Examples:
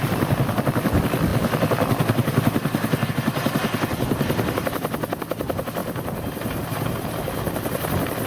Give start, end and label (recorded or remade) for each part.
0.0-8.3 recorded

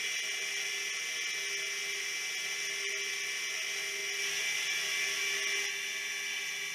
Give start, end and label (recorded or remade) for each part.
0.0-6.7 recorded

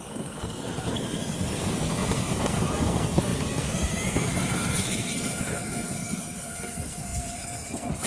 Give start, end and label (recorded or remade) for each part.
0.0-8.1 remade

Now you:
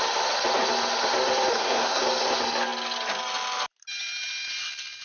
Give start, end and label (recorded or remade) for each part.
0.0-1.5 recorded; 1.5-2.0 remade; 2.0-5.0 recorded

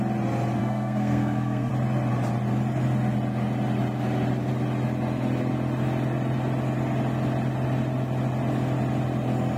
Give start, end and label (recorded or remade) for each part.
0.0-0.6 recorded; 0.6-1.7 remade; 1.7-9.6 recorded